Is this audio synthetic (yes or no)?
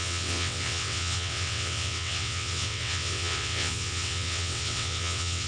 yes